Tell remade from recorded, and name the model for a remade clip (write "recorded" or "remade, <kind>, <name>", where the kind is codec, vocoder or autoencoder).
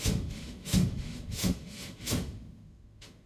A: remade, autoencoder, DAC-VAE